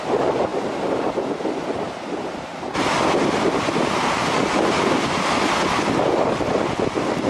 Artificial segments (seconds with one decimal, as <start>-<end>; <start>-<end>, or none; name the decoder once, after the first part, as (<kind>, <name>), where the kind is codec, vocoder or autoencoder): 0.0-0.5 (vocoder, BigVGAN v2); 1.2-7.3